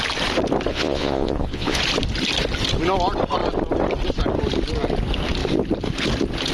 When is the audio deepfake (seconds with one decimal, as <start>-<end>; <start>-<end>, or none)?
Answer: 0.7-1.8